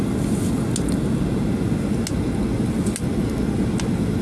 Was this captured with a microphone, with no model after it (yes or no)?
yes